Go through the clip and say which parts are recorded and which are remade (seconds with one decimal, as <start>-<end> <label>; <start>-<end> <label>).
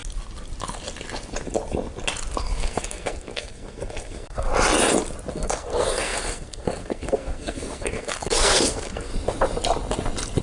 0.0-2.4 recorded; 2.4-4.5 remade; 4.5-5.3 recorded; 5.3-9.1 remade; 9.1-10.4 recorded